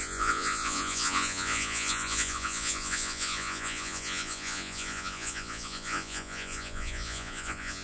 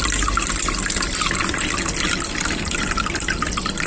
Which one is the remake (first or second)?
first